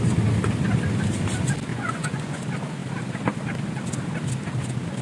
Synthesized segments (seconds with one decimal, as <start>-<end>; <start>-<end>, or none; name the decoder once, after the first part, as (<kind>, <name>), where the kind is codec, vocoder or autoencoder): 1.7-2.4 (vocoder, Vocos)